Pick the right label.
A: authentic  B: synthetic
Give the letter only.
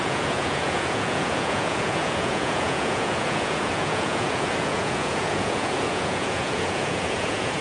B